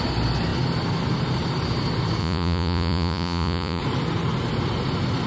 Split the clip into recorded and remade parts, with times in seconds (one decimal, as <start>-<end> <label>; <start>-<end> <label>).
0.0-2.2 recorded; 2.2-3.8 remade; 3.8-5.3 recorded